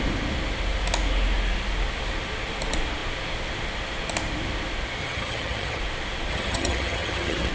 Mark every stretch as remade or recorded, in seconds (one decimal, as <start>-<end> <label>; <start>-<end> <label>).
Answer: 0.0-5.0 recorded; 5.0-5.8 remade; 5.8-6.3 recorded; 6.3-7.5 remade